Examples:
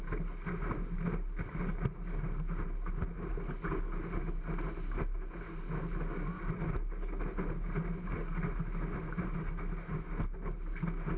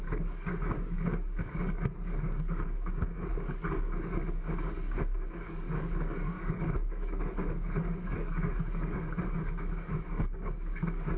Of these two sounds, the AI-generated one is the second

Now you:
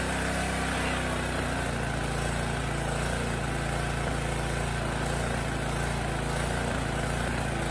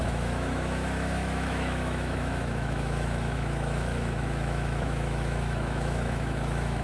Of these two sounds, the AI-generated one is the second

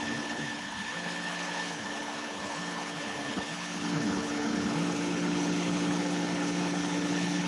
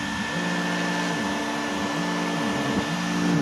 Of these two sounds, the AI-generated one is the first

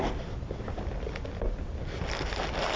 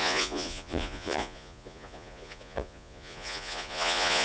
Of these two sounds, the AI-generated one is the second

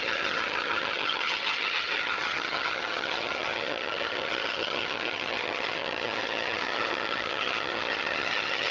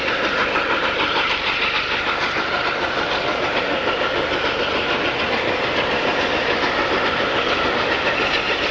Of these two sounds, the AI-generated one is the first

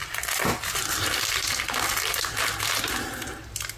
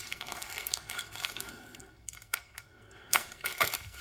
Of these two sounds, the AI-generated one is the second